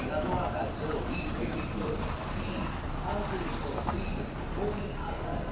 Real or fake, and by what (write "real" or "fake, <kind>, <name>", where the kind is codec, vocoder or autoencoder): real